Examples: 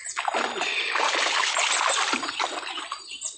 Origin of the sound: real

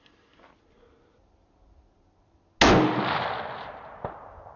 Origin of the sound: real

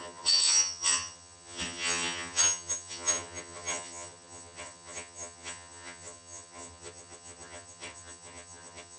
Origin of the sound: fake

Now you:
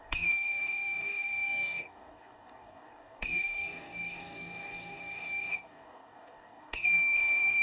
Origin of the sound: fake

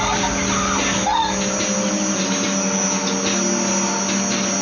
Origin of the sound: real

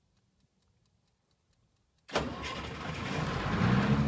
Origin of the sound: real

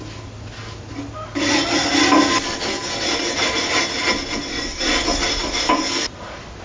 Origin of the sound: real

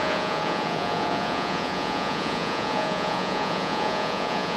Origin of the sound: fake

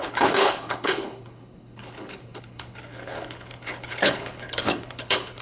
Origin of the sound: fake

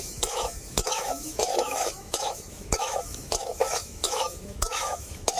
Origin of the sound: fake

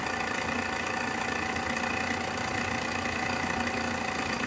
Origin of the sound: real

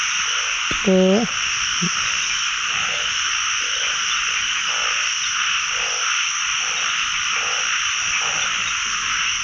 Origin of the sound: real